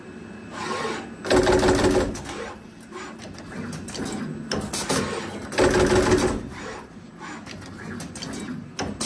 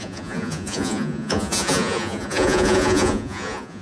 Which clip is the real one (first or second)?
first